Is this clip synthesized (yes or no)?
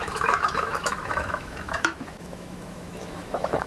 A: yes